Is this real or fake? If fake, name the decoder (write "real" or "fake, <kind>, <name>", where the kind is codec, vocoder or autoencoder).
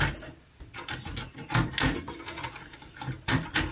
real